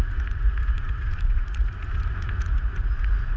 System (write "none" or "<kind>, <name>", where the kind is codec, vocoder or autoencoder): vocoder, Vocos